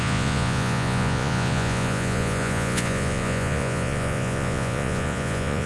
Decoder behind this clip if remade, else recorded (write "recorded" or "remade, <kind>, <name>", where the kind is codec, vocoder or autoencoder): remade, vocoder, Vocos